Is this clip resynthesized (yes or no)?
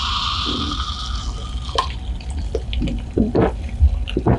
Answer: no